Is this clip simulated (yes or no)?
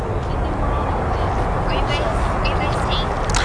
no